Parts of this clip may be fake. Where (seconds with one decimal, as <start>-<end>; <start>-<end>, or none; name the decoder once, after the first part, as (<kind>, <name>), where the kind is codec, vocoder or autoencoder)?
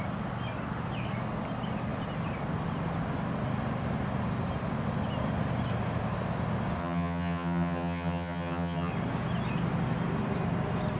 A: 6.8-8.9 (vocoder, HiFi-GAN)